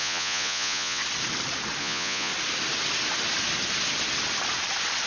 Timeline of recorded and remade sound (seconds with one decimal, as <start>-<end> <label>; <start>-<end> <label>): 0.0-1.0 remade; 1.0-1.8 recorded; 1.8-2.3 remade; 2.3-5.1 recorded